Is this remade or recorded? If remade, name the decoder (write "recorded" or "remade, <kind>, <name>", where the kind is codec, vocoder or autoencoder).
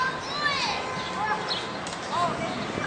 recorded